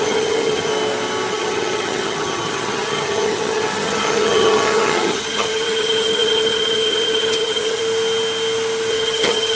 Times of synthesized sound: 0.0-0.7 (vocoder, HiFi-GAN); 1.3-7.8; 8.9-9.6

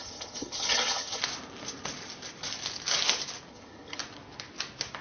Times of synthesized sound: 0.0-1.2 (vocoder, HiFi-GAN); 3.5-4.0